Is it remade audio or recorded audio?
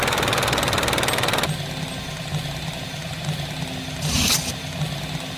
recorded